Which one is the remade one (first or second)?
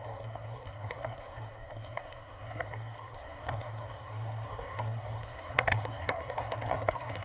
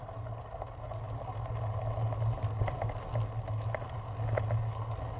first